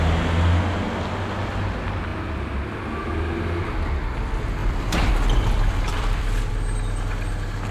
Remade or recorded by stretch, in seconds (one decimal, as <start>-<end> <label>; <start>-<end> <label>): 0.0-4.6 recorded; 4.6-5.1 remade; 5.1-5.9 recorded; 5.9-6.5 remade; 6.5-7.7 recorded